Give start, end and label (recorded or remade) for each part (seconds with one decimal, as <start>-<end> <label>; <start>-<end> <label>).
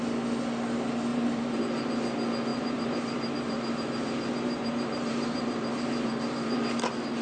0.0-1.1 recorded; 1.1-1.6 remade; 1.6-2.5 recorded; 2.5-6.8 remade; 6.8-7.2 recorded